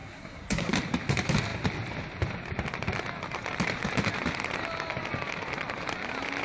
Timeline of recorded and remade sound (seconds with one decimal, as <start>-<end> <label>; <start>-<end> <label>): 0.0-0.7 remade; 0.7-6.4 recorded